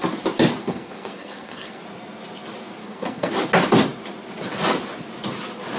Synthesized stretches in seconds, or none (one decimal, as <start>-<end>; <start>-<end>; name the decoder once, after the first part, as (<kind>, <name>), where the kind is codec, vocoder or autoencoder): 0.6-1.8 (codec, SNAC); 2.8-3.3